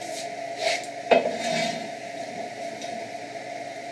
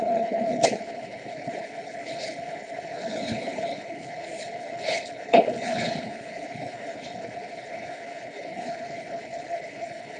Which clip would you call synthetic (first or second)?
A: second